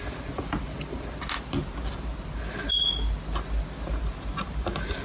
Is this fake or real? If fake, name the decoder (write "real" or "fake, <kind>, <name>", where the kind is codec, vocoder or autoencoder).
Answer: real